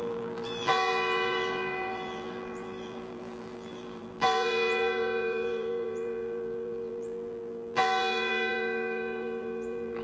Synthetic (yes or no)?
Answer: yes